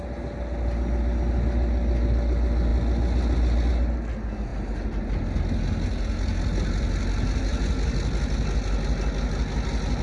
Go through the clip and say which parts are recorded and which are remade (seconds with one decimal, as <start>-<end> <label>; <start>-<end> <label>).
0.0-10.0 recorded